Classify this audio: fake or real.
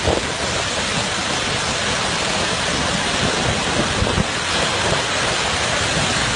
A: real